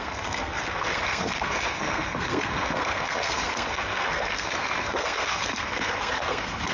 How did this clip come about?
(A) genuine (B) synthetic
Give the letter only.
B